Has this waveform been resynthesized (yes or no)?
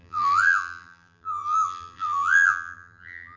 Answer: yes